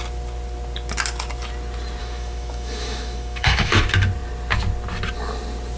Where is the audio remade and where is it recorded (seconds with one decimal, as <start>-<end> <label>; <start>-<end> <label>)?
0.0-2.0 recorded; 2.0-3.8 remade; 3.8-5.8 recorded